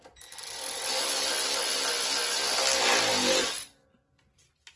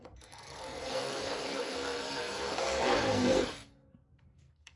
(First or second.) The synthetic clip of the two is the second